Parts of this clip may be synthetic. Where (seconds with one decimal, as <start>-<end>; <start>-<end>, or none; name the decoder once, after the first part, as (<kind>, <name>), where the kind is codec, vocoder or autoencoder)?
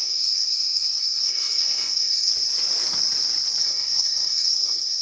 0.0-2.3 (codec, SNAC); 3.6-5.0